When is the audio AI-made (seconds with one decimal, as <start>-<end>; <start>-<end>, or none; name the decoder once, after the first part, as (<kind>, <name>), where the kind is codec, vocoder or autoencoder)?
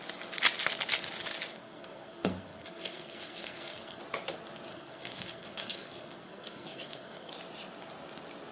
1.5-4.0 (codec, SNAC); 4.7-7.3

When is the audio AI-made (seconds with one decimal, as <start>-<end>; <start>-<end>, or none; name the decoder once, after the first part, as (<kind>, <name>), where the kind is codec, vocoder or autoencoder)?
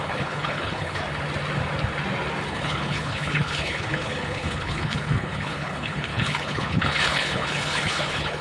0.0-1.0 (codec, HILCodec); 2.5-8.4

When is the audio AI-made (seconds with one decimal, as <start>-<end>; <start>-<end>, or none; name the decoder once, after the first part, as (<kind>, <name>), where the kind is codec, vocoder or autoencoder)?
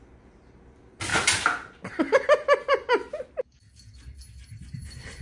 none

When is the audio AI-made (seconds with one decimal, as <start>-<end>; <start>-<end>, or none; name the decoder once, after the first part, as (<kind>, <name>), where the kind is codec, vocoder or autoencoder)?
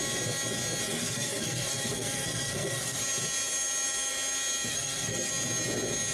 0.9-3.0 (codec, SNAC); 4.7-5.3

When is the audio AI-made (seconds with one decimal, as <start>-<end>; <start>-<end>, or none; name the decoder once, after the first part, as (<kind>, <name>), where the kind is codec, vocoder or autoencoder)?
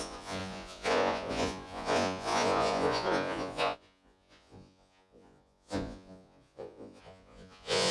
0.0-7.9 (vocoder, Vocos)